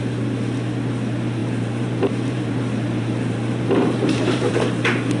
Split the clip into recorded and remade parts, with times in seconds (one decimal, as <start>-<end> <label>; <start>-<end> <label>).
0.0-1.4 recorded; 1.4-4.5 remade; 4.5-5.2 recorded